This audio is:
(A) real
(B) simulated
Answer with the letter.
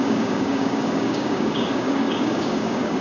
B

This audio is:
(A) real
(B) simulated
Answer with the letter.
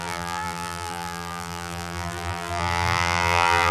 B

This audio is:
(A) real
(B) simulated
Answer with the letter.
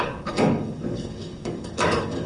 B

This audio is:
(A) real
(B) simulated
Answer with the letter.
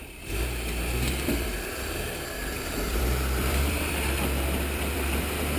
B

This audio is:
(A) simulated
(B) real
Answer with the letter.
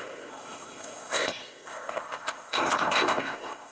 A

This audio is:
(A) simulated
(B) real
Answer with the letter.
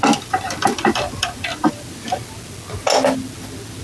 B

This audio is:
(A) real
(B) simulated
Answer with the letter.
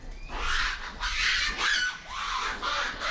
A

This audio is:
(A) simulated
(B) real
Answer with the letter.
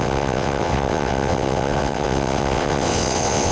A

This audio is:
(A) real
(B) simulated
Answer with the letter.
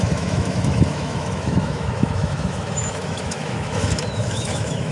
B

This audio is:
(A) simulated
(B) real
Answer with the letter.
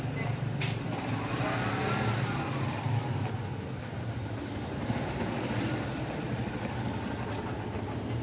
B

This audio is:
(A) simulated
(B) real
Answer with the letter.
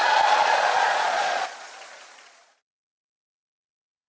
A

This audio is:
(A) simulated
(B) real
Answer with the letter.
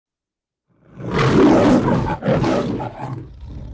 B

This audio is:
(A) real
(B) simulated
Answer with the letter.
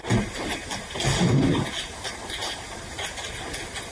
A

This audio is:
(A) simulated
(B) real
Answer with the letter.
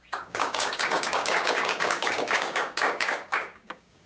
A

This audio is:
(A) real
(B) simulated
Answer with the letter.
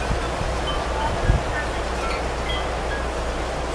A